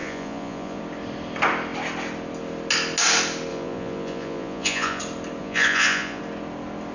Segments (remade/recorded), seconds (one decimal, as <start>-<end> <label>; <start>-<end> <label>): 0.0-0.8 remade; 0.8-3.5 recorded; 3.5-5.0 remade; 5.0-5.4 recorded; 5.4-6.2 remade; 6.2-6.9 recorded